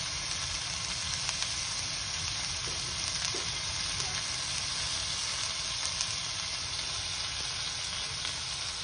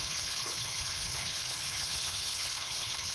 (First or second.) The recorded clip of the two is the first